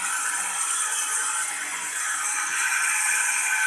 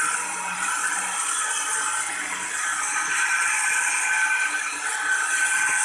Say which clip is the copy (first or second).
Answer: first